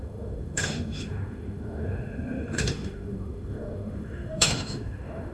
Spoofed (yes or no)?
yes